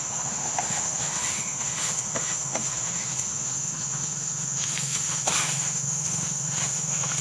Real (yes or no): no